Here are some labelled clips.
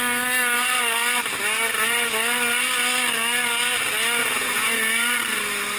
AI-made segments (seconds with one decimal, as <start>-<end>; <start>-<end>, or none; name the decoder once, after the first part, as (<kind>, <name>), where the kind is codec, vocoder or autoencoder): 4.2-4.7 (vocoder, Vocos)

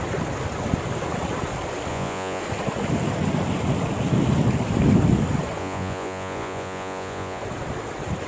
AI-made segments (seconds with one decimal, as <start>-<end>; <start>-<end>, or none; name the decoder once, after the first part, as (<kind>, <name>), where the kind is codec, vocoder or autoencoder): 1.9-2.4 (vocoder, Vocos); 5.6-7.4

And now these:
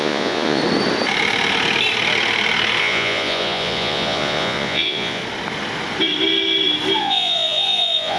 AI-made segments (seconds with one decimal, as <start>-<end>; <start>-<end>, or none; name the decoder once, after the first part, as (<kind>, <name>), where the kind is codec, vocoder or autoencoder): 0.0-0.6 (vocoder, Vocos); 2.8-5.2; 7.0-8.2

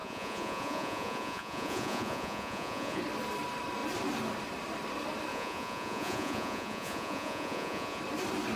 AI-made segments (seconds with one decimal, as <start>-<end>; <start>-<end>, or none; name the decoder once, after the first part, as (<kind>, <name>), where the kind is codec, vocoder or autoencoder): 0.0-3.0 (vocoder, Vocos); 5.3-8.0